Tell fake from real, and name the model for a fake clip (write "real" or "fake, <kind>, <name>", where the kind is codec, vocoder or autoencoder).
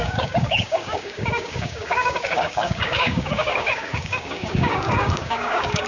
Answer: fake, codec, DAC